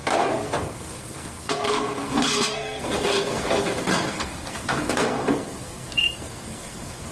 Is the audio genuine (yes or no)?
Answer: no